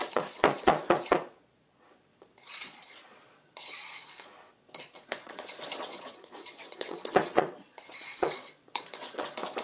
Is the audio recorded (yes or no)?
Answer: no